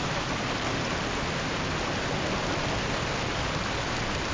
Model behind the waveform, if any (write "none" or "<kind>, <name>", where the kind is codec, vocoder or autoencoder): none